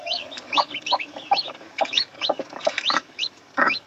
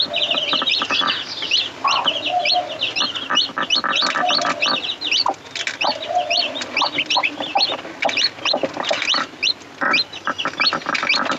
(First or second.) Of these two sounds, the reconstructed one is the first